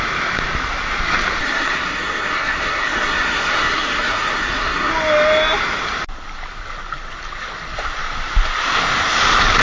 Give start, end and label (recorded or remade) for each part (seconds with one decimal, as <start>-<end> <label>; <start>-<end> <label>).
0.0-1.4 recorded; 1.4-4.9 remade; 4.9-9.6 recorded

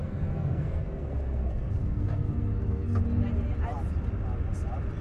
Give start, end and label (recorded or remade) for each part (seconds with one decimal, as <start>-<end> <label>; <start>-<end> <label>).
0.0-3.0 remade; 3.0-5.0 recorded

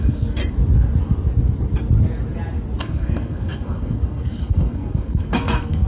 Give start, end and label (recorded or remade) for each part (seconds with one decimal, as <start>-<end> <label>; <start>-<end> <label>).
0.0-0.4 remade; 0.4-2.8 recorded; 2.8-5.9 remade

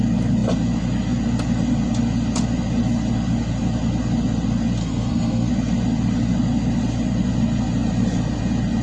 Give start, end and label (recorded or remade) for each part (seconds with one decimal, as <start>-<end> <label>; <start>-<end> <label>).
0.0-4.8 recorded; 4.8-5.5 remade; 5.5-8.8 recorded

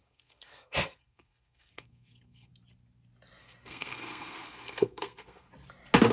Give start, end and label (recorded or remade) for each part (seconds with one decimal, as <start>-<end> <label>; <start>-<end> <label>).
0.0-2.5 remade; 2.5-3.4 recorded; 3.4-5.5 remade; 5.5-6.1 recorded

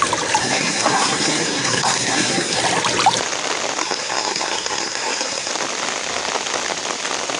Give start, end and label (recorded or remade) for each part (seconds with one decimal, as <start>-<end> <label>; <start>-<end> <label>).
0.0-0.4 recorded; 0.4-2.6 remade; 2.6-3.8 recorded; 3.8-5.5 remade; 5.5-7.4 recorded

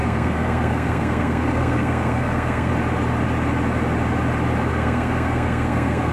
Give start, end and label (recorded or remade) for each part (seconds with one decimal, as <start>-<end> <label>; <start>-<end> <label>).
0.0-2.7 remade; 2.7-4.7 recorded; 4.7-6.1 remade